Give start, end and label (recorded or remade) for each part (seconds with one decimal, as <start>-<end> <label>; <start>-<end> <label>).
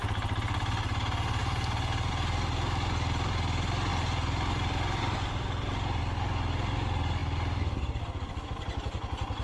0.0-1.4 recorded; 1.4-2.1 remade; 2.1-3.9 recorded; 3.9-6.0 remade; 6.0-9.4 recorded